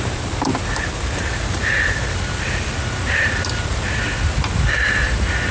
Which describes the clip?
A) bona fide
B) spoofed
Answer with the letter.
B